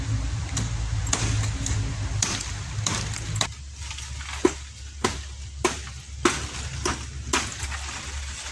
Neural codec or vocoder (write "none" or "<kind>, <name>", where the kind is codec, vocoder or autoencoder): none